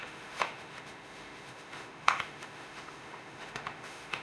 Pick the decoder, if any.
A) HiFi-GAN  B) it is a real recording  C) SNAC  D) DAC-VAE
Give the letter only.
D